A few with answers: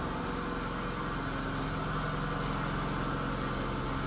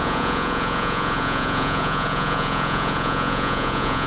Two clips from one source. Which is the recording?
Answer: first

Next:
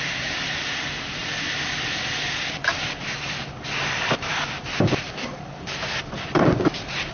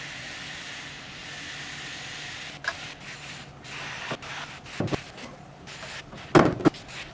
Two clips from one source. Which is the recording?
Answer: second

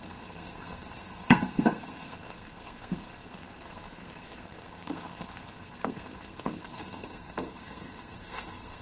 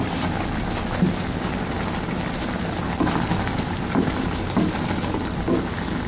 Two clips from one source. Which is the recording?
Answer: second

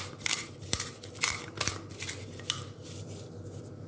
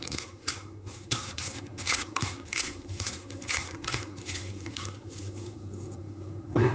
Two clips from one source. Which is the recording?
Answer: first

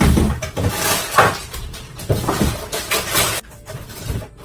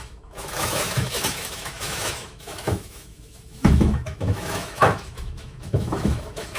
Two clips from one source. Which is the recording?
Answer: first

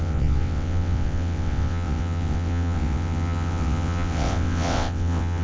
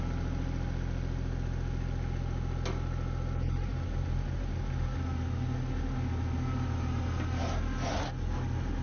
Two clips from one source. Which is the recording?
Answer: second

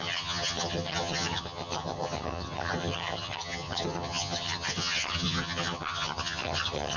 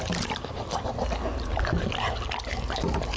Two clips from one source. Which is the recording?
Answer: second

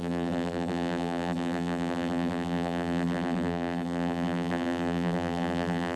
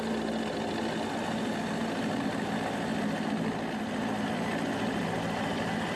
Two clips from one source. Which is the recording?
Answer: second